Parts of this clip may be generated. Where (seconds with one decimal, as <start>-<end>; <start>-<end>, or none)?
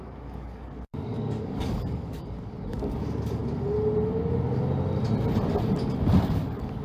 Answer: 0.0-3.4; 6.3-6.8